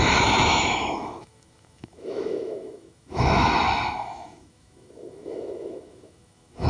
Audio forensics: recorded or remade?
remade